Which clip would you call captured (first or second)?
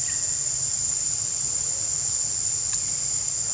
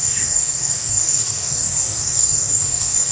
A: first